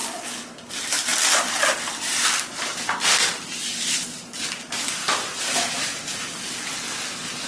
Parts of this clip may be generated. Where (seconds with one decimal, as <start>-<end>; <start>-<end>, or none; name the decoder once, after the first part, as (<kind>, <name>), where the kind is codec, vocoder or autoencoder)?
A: none